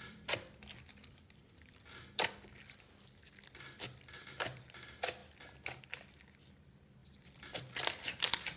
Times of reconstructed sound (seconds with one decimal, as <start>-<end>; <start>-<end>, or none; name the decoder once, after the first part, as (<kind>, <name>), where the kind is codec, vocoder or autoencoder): 0.0-5.2 (vocoder, BigVGAN v2); 5.8-8.6